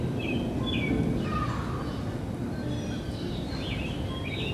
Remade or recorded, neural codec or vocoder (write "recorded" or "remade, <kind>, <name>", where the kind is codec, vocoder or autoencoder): recorded